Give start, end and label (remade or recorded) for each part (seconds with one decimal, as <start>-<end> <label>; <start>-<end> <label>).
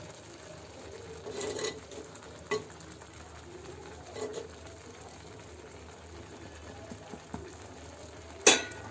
0.0-8.9 recorded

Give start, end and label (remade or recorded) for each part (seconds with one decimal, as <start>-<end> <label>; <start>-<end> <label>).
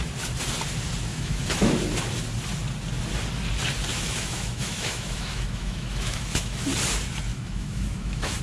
0.0-1.1 recorded; 1.1-1.7 remade; 1.7-3.9 recorded; 3.9-6.7 remade; 6.7-7.3 recorded; 7.3-8.4 remade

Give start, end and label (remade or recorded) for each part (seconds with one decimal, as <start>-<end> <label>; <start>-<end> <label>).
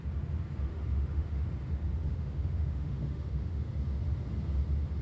0.0-0.7 recorded; 0.7-1.5 remade; 1.5-2.1 recorded; 2.1-3.7 remade; 3.7-5.0 recorded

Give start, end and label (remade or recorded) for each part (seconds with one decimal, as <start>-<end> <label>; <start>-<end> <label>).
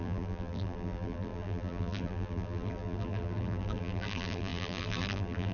0.0-5.5 remade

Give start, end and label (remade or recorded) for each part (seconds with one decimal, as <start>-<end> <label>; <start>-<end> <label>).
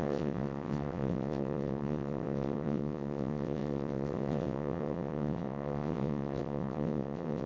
0.0-7.5 remade